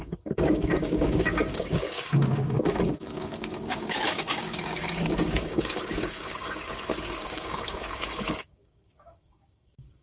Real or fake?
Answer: fake